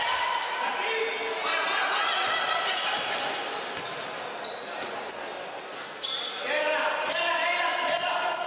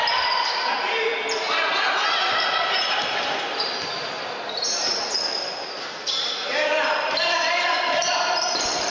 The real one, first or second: first